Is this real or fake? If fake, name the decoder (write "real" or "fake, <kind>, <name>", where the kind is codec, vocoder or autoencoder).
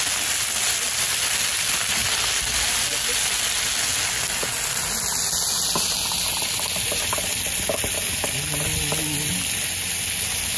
real